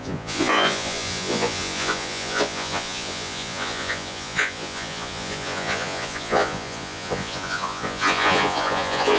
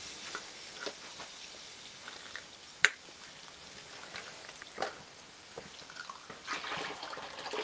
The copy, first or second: first